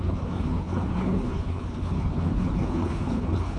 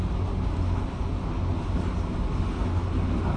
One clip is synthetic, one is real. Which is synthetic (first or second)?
first